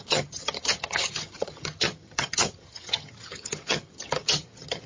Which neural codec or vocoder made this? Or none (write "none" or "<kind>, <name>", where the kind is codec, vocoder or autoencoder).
vocoder, HiFi-GAN